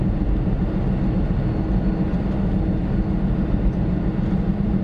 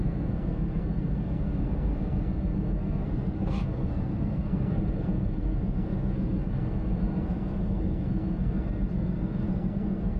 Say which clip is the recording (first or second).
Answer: first